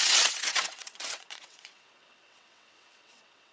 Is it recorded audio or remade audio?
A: remade